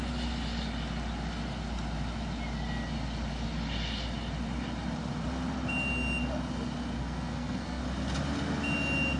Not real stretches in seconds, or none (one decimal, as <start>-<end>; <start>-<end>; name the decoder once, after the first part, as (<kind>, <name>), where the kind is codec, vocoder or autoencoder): 7.0-7.8 (codec, SNAC)